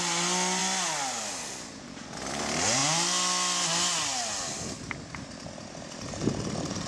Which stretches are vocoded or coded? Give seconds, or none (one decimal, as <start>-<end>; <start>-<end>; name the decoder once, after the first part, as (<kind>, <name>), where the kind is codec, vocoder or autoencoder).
none